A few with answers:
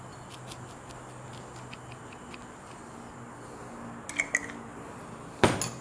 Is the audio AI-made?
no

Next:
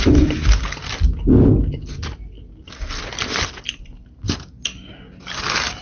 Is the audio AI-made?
no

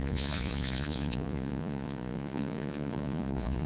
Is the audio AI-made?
yes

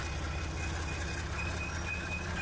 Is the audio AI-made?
no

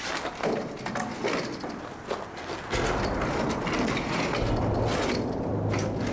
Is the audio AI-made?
no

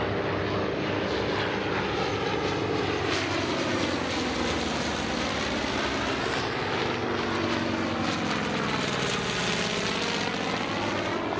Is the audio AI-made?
no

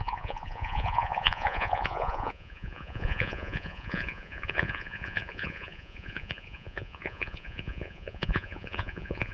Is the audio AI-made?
yes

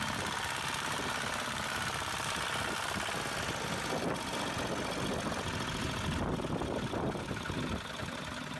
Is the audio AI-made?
no